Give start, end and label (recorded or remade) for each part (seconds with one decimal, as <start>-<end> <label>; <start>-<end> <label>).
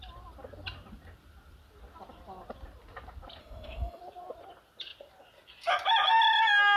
0.0-3.4 recorded; 3.4-4.0 remade; 4.0-6.8 recorded